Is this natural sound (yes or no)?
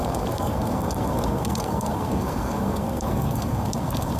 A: no